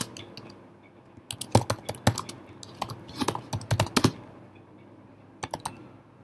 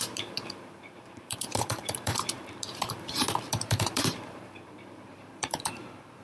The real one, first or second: first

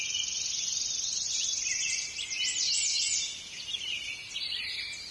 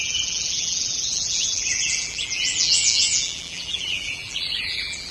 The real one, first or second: first